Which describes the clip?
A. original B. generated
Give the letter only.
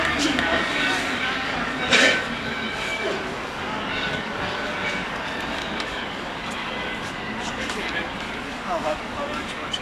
B